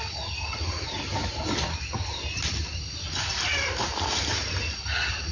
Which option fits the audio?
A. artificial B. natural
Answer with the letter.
B